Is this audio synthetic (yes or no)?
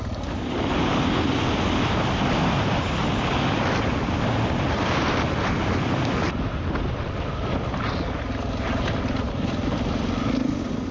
no